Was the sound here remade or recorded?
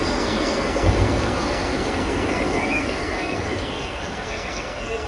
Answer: remade